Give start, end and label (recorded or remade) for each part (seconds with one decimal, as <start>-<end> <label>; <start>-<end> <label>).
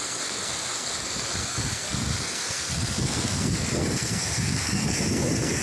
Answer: 0.0-5.6 remade